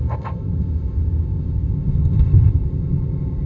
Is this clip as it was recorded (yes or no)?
no